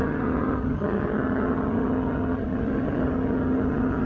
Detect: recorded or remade remade